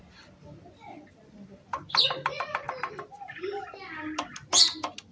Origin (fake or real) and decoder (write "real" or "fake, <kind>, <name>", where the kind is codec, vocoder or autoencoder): real